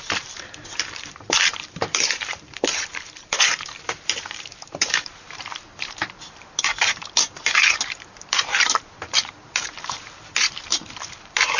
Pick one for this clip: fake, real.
fake